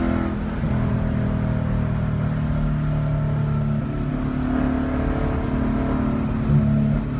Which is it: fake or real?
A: real